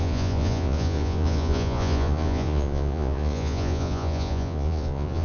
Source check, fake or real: fake